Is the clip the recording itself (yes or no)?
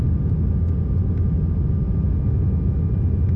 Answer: yes